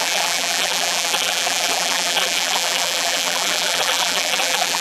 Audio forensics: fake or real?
fake